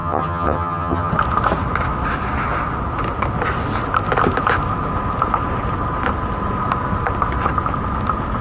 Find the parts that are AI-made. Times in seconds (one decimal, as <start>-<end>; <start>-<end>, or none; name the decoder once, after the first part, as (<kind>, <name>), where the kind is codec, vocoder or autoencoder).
0.0-1.1 (vocoder, HiFi-GAN)